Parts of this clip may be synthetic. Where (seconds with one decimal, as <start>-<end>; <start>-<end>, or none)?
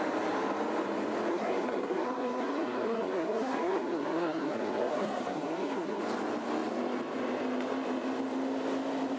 1.3-6.0